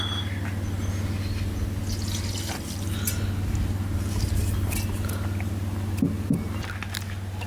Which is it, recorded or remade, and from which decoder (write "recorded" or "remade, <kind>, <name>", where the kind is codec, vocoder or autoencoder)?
recorded